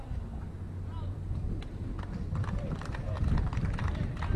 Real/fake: fake